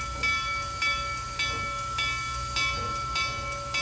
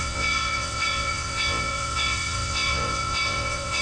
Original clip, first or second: first